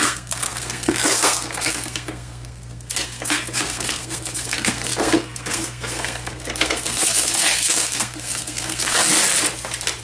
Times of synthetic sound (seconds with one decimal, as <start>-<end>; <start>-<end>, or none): 0.0-9.1